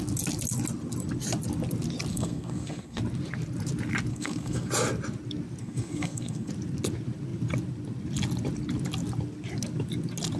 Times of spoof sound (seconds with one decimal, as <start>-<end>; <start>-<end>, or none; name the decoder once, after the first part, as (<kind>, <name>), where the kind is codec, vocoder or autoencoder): 2.1-3.0 (codec, SNAC); 4.1-4.7; 5.6-6.5

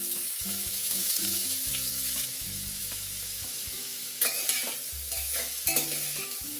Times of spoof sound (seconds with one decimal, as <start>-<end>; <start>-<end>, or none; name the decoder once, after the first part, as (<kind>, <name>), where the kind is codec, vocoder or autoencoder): 0.0-4.4 (autoencoder, DAC-VAE); 5.1-6.6

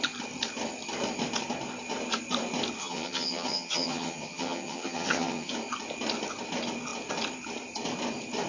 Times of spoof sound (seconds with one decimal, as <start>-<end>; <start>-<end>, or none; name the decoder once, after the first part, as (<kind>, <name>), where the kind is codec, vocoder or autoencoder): 2.8-5.5 (vocoder, HiFi-GAN)

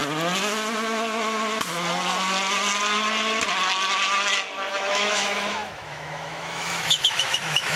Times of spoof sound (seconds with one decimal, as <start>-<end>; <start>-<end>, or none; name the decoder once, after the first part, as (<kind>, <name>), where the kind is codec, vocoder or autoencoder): 4.7-7.8 (autoencoder, DAC-VAE)

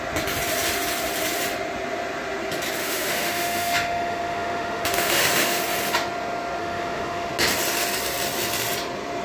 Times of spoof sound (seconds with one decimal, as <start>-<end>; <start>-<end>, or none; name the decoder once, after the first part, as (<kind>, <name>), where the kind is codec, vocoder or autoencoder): 2.8-5.6 (autoencoder, DAC-VAE); 6.6-7.3

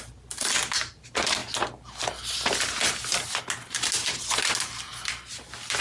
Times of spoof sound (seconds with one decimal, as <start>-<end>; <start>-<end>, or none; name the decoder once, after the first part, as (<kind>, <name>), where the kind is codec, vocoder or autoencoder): none

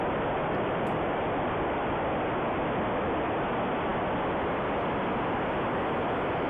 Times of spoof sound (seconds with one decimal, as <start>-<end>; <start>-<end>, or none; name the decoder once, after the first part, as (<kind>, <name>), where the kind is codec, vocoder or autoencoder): 0.4-1.2 (vocoder, BigVGAN v2)